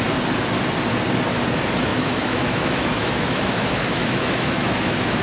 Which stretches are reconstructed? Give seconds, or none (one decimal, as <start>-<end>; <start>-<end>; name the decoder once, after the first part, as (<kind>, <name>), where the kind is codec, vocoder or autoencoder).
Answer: 1.9-5.2 (autoencoder, DAC-VAE)